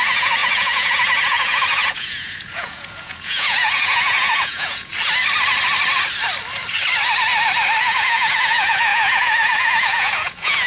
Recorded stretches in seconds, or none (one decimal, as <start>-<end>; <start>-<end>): 4.9-7.8